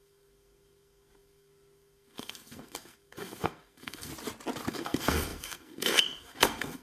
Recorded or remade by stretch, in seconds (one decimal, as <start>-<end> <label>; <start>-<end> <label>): 0.0-4.1 remade; 4.1-4.7 recorded; 4.7-6.8 remade